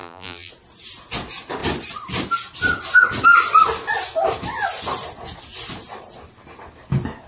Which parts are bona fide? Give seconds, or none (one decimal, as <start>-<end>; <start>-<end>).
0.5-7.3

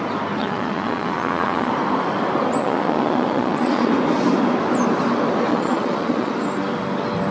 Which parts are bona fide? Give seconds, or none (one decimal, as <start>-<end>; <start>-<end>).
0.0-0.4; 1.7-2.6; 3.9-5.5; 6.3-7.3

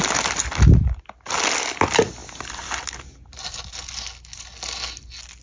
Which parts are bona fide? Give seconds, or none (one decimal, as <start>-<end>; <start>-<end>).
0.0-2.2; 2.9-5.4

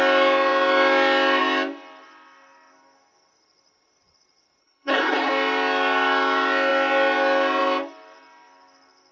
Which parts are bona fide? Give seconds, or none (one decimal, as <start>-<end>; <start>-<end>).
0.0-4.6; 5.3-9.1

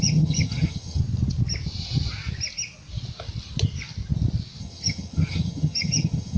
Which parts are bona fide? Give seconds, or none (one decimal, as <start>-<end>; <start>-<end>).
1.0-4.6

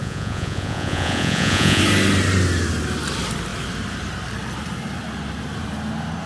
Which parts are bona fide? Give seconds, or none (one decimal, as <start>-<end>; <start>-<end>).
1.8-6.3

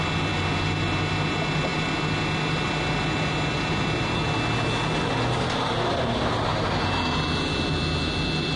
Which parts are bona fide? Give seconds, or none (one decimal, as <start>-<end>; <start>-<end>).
0.0-8.6

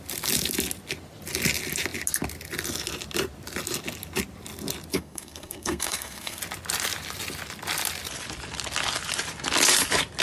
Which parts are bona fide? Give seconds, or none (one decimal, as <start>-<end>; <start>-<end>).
0.0-4.9; 6.4-10.2